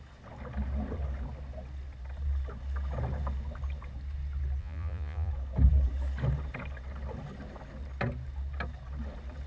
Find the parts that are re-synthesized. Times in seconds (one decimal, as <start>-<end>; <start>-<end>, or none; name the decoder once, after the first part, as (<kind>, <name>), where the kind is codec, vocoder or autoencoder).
4.6-5.3 (vocoder, Vocos)

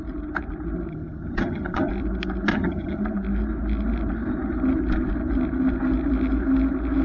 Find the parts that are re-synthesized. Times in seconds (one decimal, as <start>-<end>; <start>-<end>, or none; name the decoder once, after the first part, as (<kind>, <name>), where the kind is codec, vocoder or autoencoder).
0.9-1.9 (vocoder, HiFi-GAN); 2.5-3.0

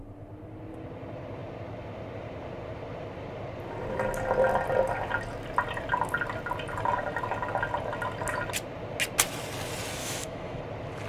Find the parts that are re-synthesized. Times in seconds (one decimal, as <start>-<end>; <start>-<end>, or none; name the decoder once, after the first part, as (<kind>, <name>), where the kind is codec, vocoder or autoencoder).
10.0-10.6 (autoencoder, DAC-VAE)

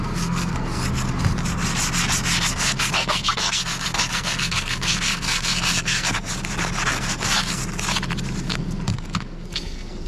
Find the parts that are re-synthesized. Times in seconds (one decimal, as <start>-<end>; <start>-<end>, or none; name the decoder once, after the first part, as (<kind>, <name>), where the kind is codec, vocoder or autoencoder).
0.0-0.8 (codec, SNAC); 2.5-6.3; 6.9-7.6; 8.4-10.1